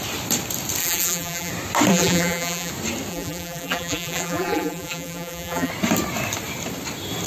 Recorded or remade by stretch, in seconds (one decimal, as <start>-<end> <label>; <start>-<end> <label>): 0.0-0.8 recorded; 0.8-1.5 remade; 1.5-1.9 recorded; 1.9-2.7 remade; 2.7-3.1 recorded; 3.1-5.7 remade; 5.7-7.3 recorded